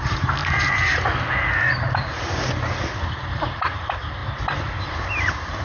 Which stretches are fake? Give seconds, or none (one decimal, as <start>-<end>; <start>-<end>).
0.0-4.2; 4.8-5.6